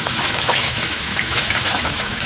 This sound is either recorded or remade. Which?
remade